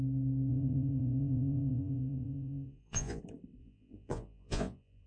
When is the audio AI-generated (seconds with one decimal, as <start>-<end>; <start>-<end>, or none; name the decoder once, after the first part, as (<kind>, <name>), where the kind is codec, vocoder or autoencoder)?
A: 0.5-3.2 (vocoder, Vocos); 3.6-5.1